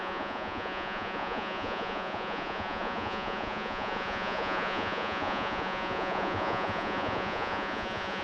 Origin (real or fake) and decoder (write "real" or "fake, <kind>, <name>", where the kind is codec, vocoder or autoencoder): fake, vocoder, Vocos